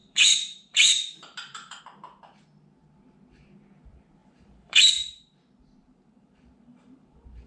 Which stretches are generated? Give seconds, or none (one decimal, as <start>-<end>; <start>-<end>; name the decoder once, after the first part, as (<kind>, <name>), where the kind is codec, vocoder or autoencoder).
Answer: 0.0-1.8 (vocoder, BigVGAN v2); 4.2-7.5